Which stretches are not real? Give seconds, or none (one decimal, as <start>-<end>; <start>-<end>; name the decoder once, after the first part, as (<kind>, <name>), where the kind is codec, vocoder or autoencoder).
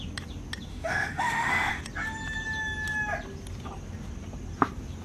0.7-1.8 (autoencoder, DAC-VAE)